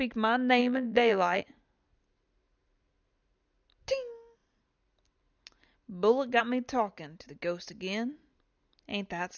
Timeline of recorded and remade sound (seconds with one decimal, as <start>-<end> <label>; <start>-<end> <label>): 0.0-0.6 recorded; 0.6-1.4 remade; 1.4-9.4 recorded